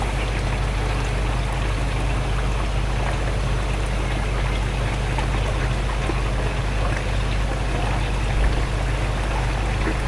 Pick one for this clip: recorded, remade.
recorded